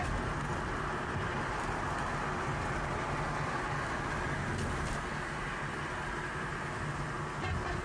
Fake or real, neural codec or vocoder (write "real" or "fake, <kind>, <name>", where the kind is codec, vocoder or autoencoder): real